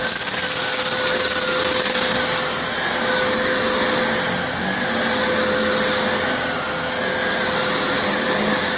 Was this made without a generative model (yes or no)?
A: yes